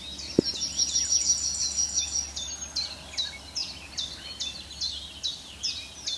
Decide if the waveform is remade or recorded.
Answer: recorded